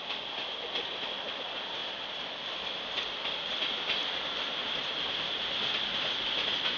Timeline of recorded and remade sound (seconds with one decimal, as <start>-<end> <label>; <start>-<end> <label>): 0.0-6.8 recorded